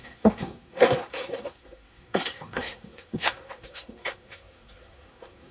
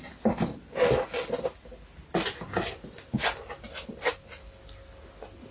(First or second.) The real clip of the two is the second